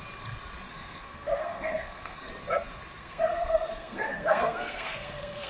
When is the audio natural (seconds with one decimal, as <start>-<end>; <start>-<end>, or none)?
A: 0.0-0.7; 2.3-3.0